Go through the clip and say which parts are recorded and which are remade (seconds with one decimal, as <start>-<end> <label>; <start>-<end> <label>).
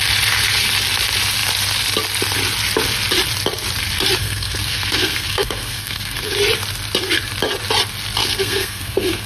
0.0-4.2 recorded; 4.2-6.3 remade; 6.3-8.2 recorded; 8.2-9.3 remade